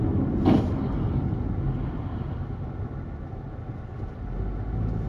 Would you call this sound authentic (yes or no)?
yes